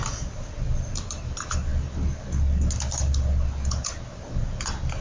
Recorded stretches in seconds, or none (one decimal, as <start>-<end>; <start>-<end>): 0.0-5.0